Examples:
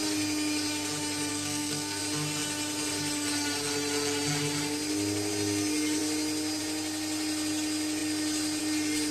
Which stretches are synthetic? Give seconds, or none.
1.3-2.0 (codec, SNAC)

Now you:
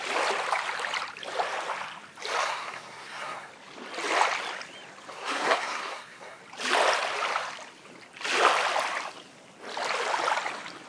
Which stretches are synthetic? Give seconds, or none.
2.4-3.5 (codec, SNAC); 5.1-6.4

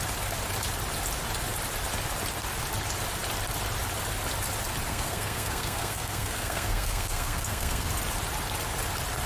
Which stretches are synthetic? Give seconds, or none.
4.9-7.9 (codec, SNAC)

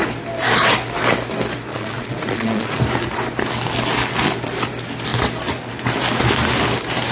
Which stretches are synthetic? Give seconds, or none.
1.7-2.8 (vocoder, Vocos)